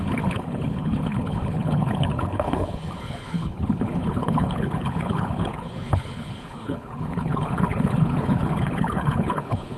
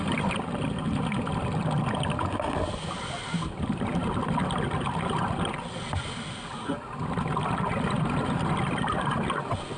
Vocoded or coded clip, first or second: first